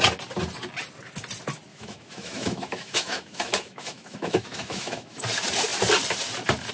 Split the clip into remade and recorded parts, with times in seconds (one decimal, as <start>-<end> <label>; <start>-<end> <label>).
0.0-1.7 recorded; 1.7-5.2 remade; 5.2-6.7 recorded